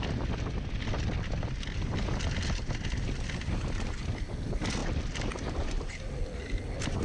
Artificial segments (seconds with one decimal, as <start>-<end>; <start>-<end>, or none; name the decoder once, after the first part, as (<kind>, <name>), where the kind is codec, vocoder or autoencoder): 4.8-6.0 (vocoder, BigVGAN v2)